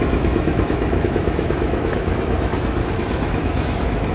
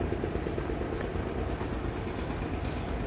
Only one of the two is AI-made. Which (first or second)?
first